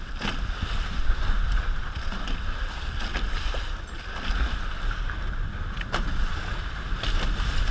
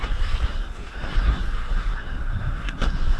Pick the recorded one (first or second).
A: first